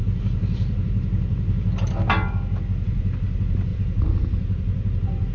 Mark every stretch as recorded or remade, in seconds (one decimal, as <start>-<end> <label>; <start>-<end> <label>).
0.0-1.7 remade; 1.7-3.7 recorded; 3.7-5.3 remade